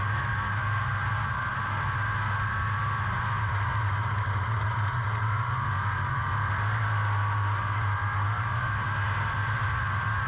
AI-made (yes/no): no